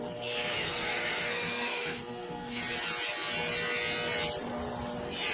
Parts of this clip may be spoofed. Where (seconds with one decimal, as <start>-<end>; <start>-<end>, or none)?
0.4-2.6